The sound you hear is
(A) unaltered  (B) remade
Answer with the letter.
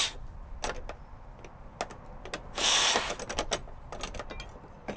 A